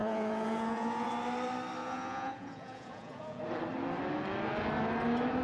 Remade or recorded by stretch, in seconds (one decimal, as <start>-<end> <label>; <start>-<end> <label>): 0.0-1.1 remade; 1.1-1.8 recorded; 1.8-3.4 remade; 3.4-5.4 recorded